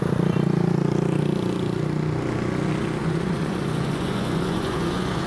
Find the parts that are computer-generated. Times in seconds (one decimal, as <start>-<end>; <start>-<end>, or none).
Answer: 3.0-5.3